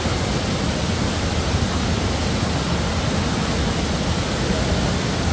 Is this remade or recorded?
recorded